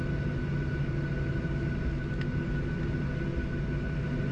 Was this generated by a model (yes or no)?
no